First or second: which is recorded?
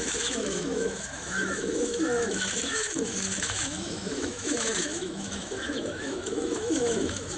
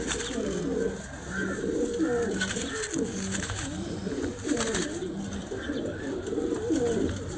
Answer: second